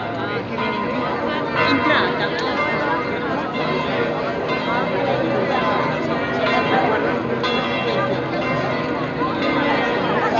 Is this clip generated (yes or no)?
no